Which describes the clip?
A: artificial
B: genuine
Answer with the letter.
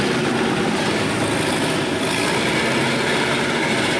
B